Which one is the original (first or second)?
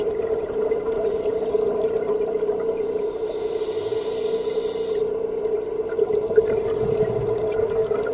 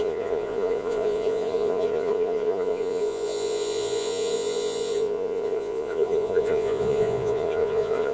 first